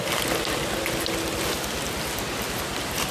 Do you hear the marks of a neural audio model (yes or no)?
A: no